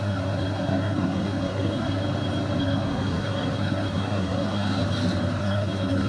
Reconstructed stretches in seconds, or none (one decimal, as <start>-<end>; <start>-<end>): 0.0-2.0; 2.6-4.8; 5.4-6.1